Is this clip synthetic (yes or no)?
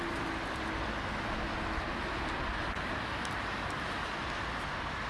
no